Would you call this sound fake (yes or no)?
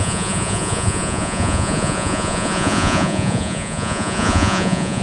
yes